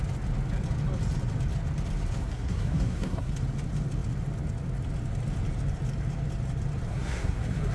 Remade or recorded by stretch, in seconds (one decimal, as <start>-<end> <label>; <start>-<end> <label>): 0.0-2.2 recorded; 2.2-3.3 remade; 3.3-6.9 recorded; 6.9-7.7 remade